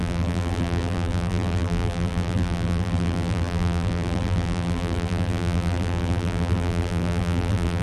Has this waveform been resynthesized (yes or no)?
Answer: yes